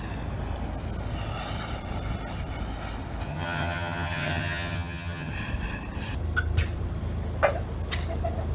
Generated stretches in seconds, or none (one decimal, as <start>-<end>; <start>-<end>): 3.3-5.3